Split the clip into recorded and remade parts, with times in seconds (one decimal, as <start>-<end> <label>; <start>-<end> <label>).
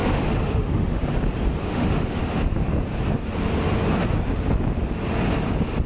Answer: 0.0-1.0 remade; 1.0-1.6 recorded; 1.6-2.2 remade; 2.2-5.9 recorded